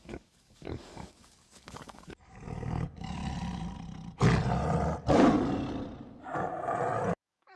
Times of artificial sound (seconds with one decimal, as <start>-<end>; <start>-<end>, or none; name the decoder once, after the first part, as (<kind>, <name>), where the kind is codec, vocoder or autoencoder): 0.0-3.2 (codec, DAC); 7.1-7.6